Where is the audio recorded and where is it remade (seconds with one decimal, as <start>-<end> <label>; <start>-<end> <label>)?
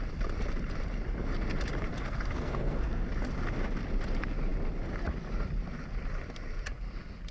0.0-1.9 recorded; 1.9-3.1 remade; 3.1-7.3 recorded